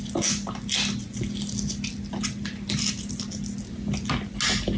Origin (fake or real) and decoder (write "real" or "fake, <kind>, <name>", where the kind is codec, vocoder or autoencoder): real